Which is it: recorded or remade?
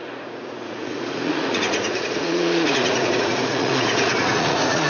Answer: remade